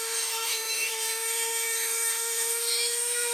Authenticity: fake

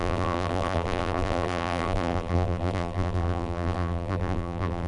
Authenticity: fake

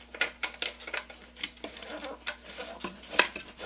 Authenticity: real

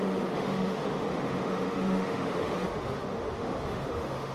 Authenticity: fake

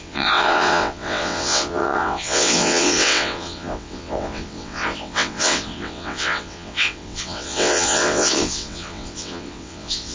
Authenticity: fake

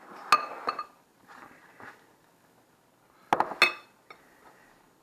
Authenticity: real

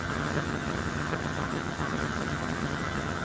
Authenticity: fake